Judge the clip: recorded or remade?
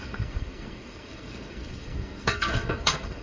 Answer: remade